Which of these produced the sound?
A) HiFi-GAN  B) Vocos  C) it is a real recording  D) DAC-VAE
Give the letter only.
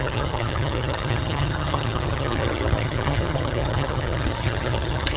A